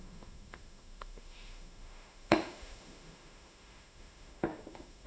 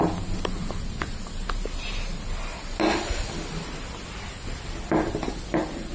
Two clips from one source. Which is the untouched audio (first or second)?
second